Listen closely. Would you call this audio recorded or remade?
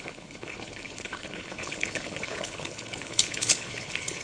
remade